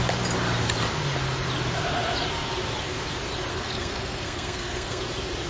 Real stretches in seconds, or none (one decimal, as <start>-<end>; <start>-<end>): 0.0-3.5; 5.0-5.5